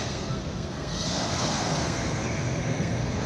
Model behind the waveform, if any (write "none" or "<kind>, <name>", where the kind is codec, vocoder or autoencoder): codec, SNAC